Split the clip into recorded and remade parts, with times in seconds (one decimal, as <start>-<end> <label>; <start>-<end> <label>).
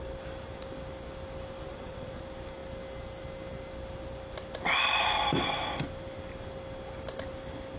0.0-1.7 recorded; 1.7-2.2 remade; 2.2-7.8 recorded